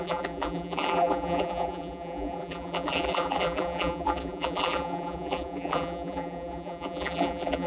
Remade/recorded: remade